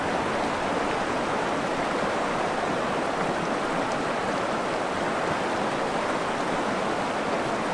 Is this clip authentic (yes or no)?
yes